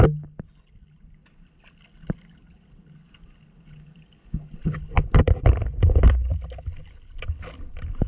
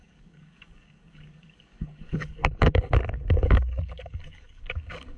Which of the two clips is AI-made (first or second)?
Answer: second